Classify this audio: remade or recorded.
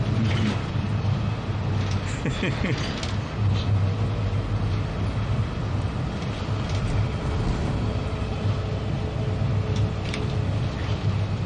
recorded